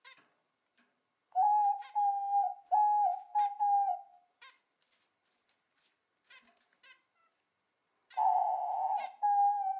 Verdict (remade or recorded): recorded